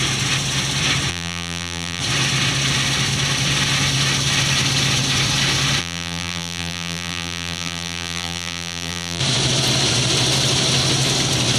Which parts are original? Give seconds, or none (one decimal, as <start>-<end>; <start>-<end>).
0.0-1.1; 2.0-5.8; 9.2-11.6

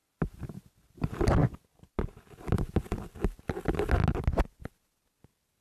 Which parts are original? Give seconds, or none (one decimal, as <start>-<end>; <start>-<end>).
0.0-5.6

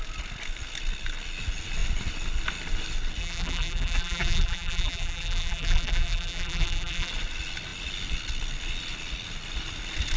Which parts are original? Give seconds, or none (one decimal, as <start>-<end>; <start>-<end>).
0.0-3.2; 7.1-10.2

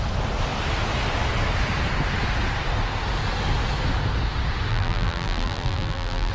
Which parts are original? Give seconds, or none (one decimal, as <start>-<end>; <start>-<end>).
0.0-4.7

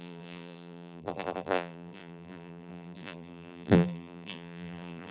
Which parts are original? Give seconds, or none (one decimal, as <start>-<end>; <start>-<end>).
none

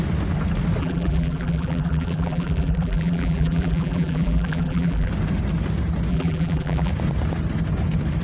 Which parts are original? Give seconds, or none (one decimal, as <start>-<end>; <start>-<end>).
0.0-0.8; 5.1-6.1; 6.9-8.2

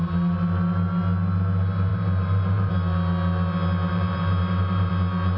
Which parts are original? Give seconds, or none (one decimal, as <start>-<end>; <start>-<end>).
0.0-1.9; 2.7-3.9; 4.9-5.4

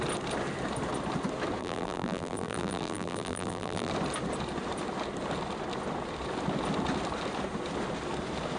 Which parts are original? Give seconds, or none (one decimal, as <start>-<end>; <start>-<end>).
0.0-1.6; 3.9-8.6